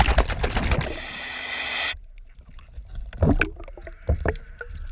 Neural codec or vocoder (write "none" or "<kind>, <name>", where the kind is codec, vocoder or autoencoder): none